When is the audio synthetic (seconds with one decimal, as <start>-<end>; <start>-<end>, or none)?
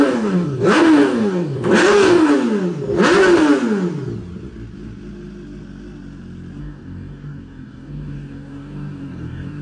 0.0-2.3; 6.6-9.6